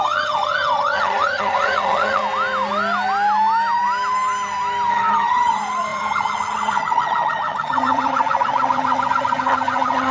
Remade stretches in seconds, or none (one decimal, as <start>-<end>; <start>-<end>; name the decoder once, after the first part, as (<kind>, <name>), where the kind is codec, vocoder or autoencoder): 0.0-2.2 (vocoder, HiFi-GAN); 4.9-10.1